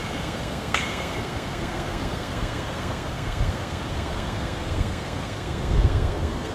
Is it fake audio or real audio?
fake